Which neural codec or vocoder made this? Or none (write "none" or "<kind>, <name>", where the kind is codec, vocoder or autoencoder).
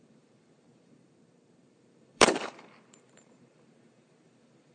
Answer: vocoder, BigVGAN v2